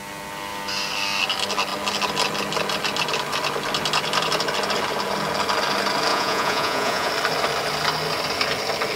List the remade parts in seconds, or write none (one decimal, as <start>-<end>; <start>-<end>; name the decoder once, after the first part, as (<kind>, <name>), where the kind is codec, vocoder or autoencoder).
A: 6.1-7.1 (vocoder, Vocos)